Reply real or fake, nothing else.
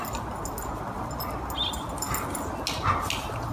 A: real